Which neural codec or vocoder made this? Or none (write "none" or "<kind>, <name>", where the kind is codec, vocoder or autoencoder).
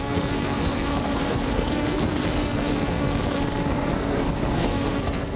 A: codec, SNAC